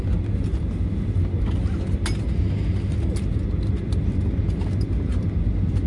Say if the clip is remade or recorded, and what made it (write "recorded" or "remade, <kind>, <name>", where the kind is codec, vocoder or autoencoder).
recorded